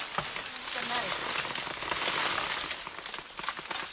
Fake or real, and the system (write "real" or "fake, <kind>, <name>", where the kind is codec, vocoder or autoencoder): real